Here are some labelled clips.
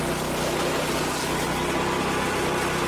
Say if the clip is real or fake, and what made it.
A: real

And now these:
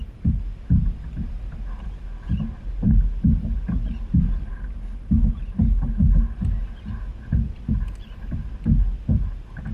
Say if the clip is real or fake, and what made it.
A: real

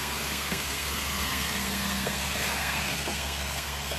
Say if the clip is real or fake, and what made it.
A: fake, codec, SNAC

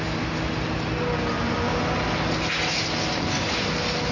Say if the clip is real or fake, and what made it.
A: real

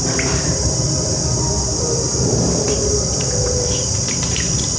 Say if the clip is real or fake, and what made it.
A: fake, vocoder, BigVGAN v2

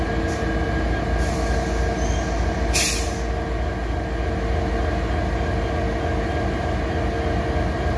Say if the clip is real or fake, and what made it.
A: real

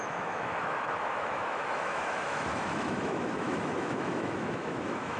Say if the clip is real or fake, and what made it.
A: fake, autoencoder, DAC-VAE